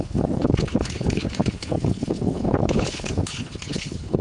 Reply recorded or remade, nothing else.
remade